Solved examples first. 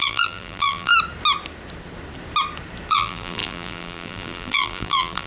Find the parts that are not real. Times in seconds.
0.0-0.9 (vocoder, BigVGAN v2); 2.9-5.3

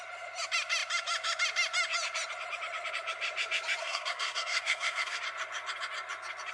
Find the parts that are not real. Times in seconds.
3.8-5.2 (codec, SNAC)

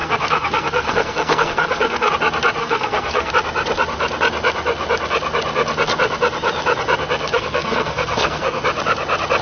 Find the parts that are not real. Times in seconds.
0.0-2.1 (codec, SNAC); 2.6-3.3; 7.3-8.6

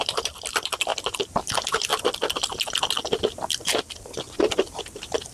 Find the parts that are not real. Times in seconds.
0.0-0.9 (vocoder, BigVGAN v2); 1.5-1.9; 3.5-5.3

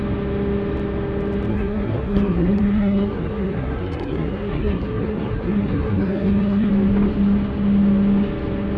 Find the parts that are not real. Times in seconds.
1.5-6.7 (codec, SNAC)

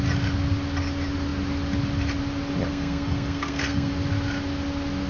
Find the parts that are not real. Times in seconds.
2.7-3.9 (codec, SNAC)

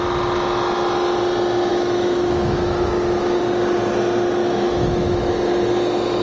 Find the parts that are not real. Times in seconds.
1.7-3.4 (autoencoder, DAC-VAE); 4.4-5.3

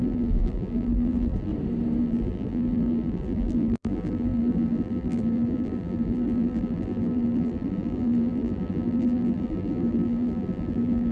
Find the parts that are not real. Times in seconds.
0.0-1.5 (vocoder, BigVGAN v2); 2.0-11.1